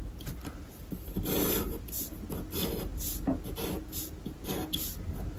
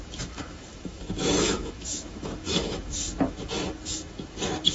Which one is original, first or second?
first